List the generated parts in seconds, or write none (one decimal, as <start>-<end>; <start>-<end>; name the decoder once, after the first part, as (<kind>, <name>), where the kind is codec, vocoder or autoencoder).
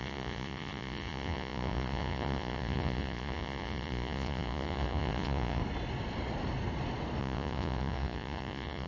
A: 0.0-5.6 (vocoder, Vocos); 7.2-8.9